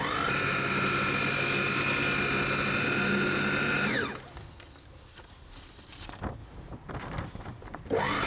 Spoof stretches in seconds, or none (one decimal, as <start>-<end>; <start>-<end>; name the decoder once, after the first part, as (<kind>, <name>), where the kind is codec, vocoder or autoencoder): none